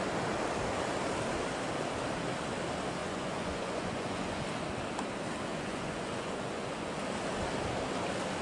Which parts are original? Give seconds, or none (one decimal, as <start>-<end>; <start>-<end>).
0.0-3.0; 4.4-5.5; 7.0-8.4